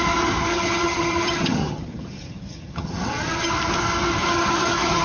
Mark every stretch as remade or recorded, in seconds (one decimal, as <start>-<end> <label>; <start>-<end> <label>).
0.0-0.5 recorded; 0.5-3.5 remade; 3.5-4.2 recorded; 4.2-5.0 remade